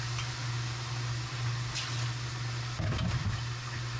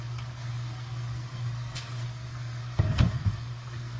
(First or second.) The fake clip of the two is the second